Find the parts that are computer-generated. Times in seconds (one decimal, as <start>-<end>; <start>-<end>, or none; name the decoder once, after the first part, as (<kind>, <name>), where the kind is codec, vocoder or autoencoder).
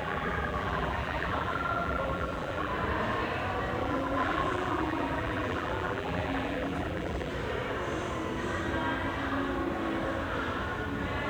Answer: 0.0-2.7 (vocoder, BigVGAN v2); 3.8-7.3